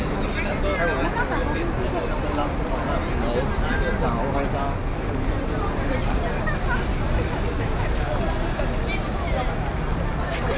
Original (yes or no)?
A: yes